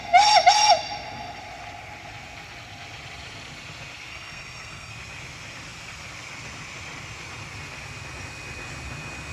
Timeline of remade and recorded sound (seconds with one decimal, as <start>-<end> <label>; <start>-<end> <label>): 0.0-4.1 recorded; 4.1-4.9 remade; 4.9-9.3 recorded

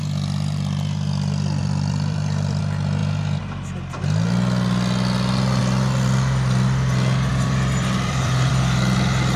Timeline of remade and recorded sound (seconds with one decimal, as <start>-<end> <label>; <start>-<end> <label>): 0.0-1.6 recorded; 1.6-2.6 remade; 2.6-7.3 recorded; 7.3-8.5 remade; 8.5-9.4 recorded

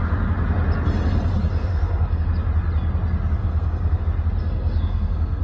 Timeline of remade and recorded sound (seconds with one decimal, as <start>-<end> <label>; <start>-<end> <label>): 0.0-1.6 recorded; 1.6-2.3 remade; 2.3-3.4 recorded; 3.4-4.0 remade; 4.0-4.4 recorded; 4.4-5.4 remade

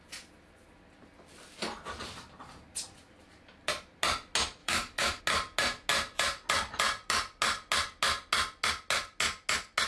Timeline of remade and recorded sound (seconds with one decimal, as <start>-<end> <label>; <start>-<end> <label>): 0.0-4.6 recorded; 4.6-5.2 remade; 5.2-9.9 recorded

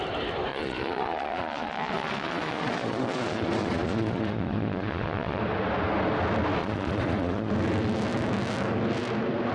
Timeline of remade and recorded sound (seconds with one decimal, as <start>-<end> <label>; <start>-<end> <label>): 0.0-0.5 recorded; 0.5-5.4 remade; 5.4-6.6 recorded; 6.6-7.5 remade; 7.5-9.5 recorded

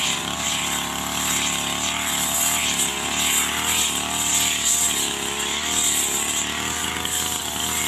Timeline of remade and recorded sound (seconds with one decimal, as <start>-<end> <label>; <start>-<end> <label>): 0.0-7.9 recorded

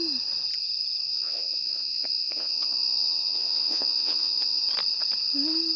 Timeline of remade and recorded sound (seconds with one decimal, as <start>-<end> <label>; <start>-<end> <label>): 0.0-1.1 recorded; 1.1-4.6 remade; 4.6-5.8 recorded